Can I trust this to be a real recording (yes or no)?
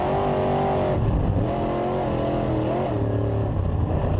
yes